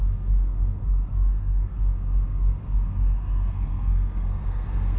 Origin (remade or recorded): remade